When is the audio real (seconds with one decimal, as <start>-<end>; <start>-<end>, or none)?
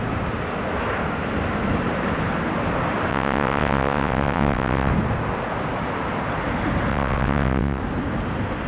0.0-3.1; 4.9-6.9; 7.8-8.7